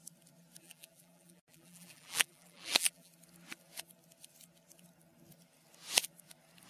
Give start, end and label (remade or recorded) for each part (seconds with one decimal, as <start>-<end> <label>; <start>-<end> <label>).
0.0-0.6 recorded; 0.6-3.1 remade; 3.1-6.7 recorded